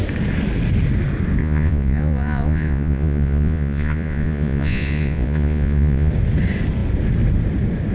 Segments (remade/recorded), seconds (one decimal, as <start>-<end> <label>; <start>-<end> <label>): 0.0-1.4 recorded; 1.4-6.1 remade; 6.1-7.9 recorded